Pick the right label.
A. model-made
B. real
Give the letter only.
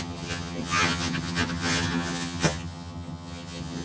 A